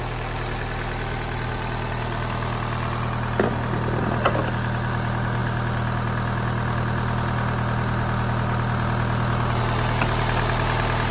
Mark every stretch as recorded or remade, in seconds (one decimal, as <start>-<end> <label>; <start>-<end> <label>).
0.0-11.1 recorded